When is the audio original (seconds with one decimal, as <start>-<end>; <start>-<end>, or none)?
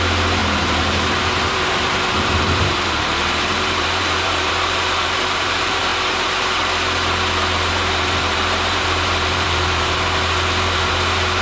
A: 5.9-7.7